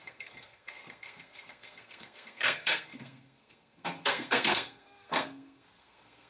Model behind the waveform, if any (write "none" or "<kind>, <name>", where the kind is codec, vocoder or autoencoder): codec, SNAC